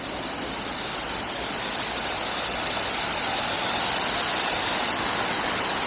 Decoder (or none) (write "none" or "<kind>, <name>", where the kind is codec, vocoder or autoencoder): none